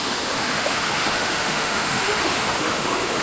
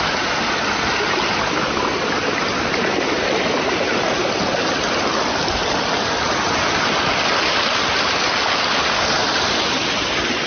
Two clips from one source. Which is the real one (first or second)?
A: second